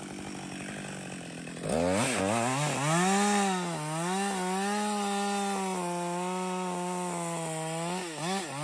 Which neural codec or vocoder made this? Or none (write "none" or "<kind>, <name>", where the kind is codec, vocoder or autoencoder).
none